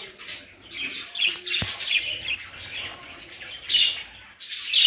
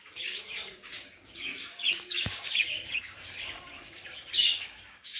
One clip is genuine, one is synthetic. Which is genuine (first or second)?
first